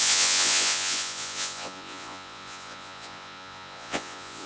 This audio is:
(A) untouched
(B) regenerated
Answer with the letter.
B